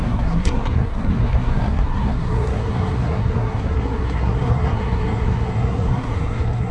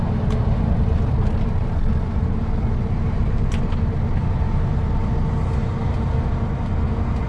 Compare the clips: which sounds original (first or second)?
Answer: second